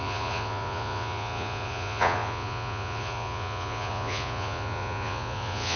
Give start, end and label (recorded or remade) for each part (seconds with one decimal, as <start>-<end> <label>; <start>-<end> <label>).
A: 0.0-5.8 remade